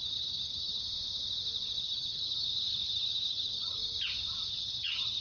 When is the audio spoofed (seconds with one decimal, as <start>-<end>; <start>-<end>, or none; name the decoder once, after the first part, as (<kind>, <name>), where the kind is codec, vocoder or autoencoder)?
0.0-0.8 (vocoder, HiFi-GAN); 1.8-3.8; 4.5-5.2